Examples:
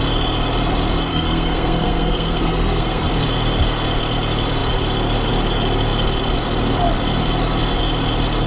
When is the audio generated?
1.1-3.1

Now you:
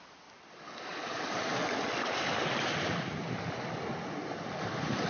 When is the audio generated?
none

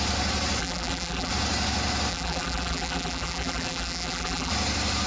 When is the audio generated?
0.6-1.3; 2.1-4.5

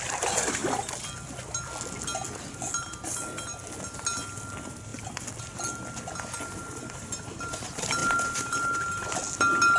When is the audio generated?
none

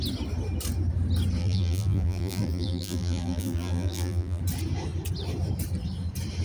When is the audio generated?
1.4-4.4